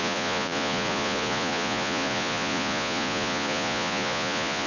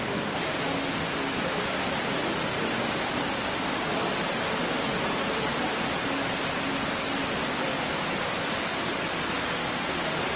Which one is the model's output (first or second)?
first